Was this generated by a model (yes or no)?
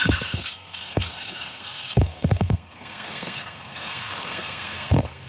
yes